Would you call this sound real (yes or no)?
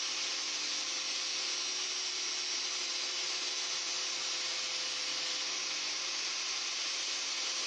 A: yes